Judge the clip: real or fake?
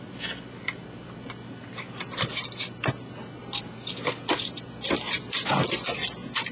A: real